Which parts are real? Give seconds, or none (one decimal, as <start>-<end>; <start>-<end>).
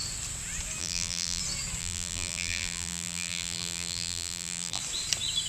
0.0-0.8; 1.4-1.8; 4.8-5.5